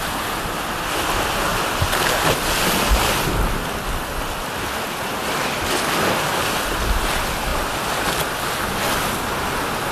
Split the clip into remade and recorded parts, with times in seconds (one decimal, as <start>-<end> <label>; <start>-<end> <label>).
0.0-9.9 recorded